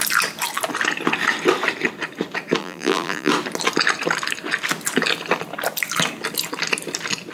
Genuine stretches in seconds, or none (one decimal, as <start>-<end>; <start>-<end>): 0.0-2.6; 3.3-7.3